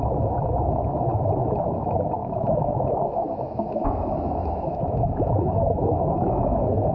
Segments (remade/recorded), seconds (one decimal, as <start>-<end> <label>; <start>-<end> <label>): 0.0-6.9 remade